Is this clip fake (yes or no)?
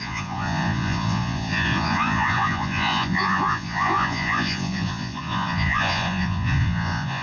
yes